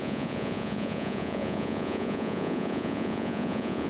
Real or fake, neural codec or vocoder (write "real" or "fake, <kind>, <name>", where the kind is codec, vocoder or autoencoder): fake, vocoder, Vocos